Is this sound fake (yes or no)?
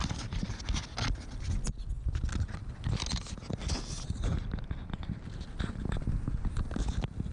no